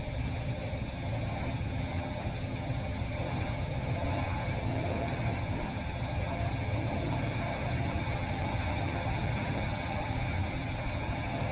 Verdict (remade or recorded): remade